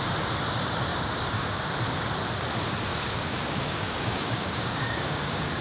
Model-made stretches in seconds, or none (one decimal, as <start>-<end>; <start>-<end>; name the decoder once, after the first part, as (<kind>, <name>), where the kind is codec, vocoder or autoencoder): 0.9-1.7 (codec, DAC); 2.9-5.6